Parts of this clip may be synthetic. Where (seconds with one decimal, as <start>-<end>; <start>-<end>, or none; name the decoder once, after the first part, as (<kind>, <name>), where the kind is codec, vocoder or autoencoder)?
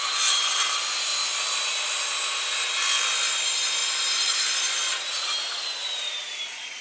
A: 0.0-1.1 (vocoder, BigVGAN v2); 3.4-6.8